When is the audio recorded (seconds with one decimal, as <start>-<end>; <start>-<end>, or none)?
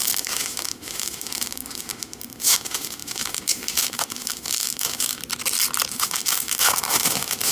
5.2-5.9